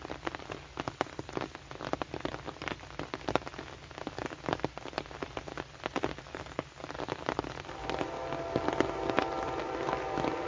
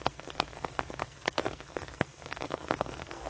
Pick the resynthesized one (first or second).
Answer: second